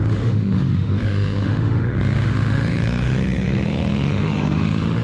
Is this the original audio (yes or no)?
no